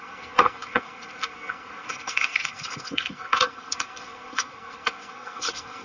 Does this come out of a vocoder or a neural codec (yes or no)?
yes